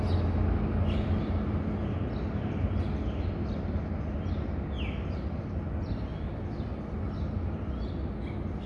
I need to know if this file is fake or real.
real